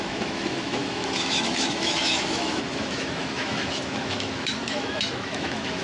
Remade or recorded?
remade